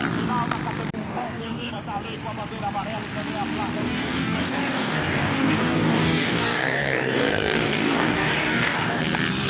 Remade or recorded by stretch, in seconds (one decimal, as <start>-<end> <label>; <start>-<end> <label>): 0.0-1.0 recorded; 1.0-1.7 remade; 1.7-3.8 recorded; 3.8-9.0 remade; 9.0-9.5 recorded